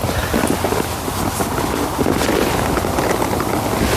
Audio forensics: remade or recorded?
recorded